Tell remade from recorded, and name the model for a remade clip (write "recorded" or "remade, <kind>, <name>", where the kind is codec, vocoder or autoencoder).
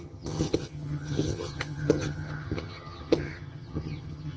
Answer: remade, vocoder, HiFi-GAN